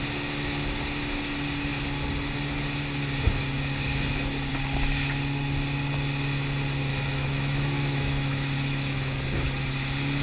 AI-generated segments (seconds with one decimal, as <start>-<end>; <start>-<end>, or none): 6.9-9.1

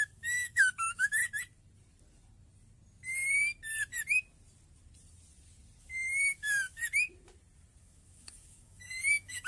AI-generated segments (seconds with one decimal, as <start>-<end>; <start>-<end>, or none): 0.0-1.2; 5.8-6.8; 7.8-9.5

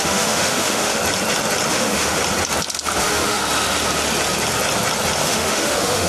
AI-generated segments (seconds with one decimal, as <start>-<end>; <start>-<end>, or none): 0.0-1.0; 1.7-2.2; 3.0-3.4; 5.2-6.1